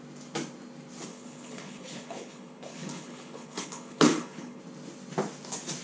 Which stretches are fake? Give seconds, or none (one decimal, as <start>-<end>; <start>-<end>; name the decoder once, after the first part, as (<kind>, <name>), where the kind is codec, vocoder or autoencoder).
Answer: 1.1-4.6 (codec, HILCodec)